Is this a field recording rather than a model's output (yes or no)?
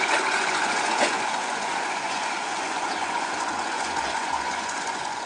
no